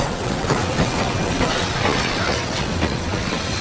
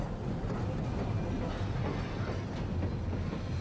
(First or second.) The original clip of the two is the second